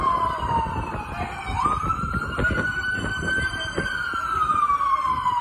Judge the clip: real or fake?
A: real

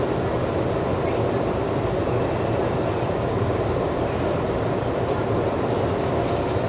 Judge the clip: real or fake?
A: fake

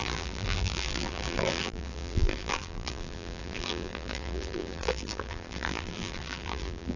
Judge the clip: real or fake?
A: fake